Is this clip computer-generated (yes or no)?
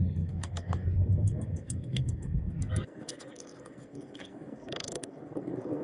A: yes